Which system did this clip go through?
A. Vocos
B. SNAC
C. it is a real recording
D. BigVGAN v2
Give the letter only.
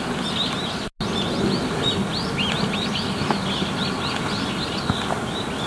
C